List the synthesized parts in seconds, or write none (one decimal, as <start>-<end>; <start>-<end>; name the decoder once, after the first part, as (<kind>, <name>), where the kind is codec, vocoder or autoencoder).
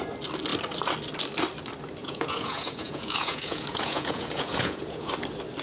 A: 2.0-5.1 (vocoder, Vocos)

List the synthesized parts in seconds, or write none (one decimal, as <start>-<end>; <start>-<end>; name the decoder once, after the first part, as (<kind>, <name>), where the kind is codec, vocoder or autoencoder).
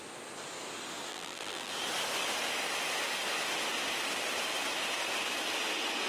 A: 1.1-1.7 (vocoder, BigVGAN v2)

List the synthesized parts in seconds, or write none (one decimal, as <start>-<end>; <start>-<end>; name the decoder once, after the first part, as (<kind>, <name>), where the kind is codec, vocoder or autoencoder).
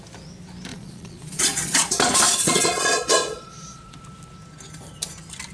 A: 0.7-4.0 (vocoder, Vocos)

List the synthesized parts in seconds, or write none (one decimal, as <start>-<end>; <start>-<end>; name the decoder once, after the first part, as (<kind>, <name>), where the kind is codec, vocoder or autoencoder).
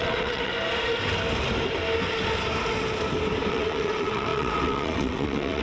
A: 0.0-0.5 (vocoder, WaveNeXt); 3.5-5.6